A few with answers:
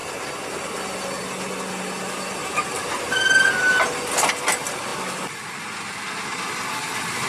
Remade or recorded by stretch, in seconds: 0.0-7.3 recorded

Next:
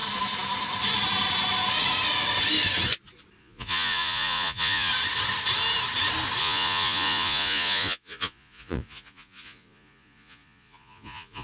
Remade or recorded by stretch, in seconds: 0.0-3.4 recorded; 3.4-4.9 remade; 4.9-6.4 recorded; 6.4-11.4 remade

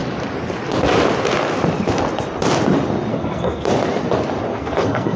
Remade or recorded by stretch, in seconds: 0.0-3.1 recorded; 3.1-3.7 remade; 3.7-4.5 recorded; 4.5-5.2 remade

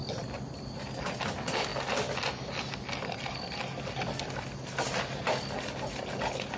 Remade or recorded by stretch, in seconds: 0.0-6.6 recorded

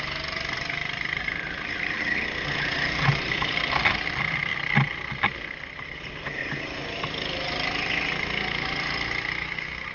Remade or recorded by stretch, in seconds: 0.0-0.8 recorded; 0.8-4.1 remade; 4.1-9.9 recorded

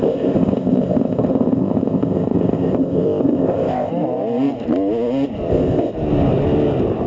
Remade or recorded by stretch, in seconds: 0.0-3.9 remade; 3.9-5.5 recorded; 5.5-5.9 remade; 5.9-7.1 recorded

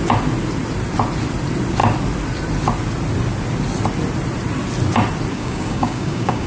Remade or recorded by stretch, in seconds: 0.0-5.3 recorded; 5.3-6.5 remade

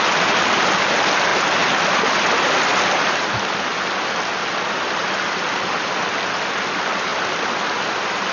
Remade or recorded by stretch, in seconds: 0.0-8.3 recorded